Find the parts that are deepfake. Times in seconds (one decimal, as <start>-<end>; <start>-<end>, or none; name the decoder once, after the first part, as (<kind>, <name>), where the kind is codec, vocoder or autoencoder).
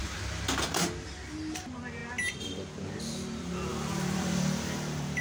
0.0-0.9 (vocoder, BigVGAN v2); 3.7-5.2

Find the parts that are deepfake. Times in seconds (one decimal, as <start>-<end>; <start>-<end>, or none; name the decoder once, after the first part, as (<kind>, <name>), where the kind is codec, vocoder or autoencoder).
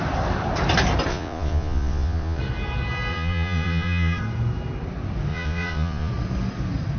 1.1-2.4 (vocoder, Vocos); 3.1-4.2; 5.3-6.1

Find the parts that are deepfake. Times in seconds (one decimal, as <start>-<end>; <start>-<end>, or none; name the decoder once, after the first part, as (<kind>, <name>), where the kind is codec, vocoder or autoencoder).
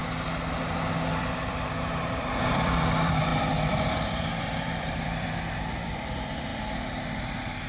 1.2-6.5 (vocoder, BigVGAN v2); 7.2-7.7